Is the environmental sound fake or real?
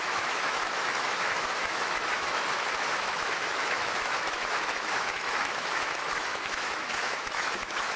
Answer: fake